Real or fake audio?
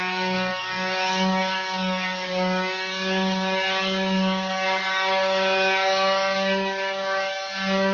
fake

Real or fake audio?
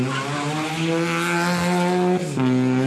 real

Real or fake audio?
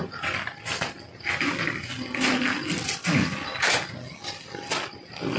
real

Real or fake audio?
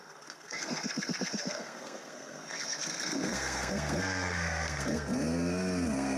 fake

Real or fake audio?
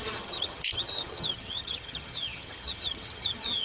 fake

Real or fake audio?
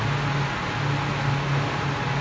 real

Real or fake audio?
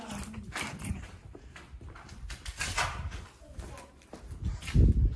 real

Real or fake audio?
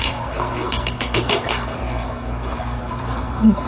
fake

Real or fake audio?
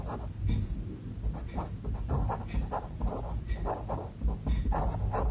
real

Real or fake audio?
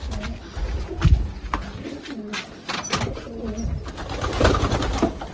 real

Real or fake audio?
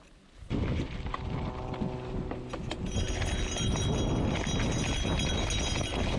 real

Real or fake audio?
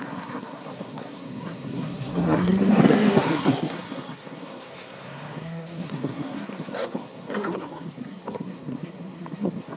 fake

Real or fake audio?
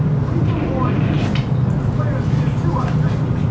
real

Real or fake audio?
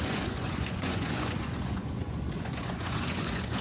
fake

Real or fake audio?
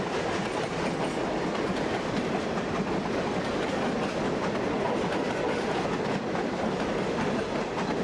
real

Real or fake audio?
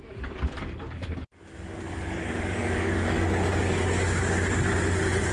fake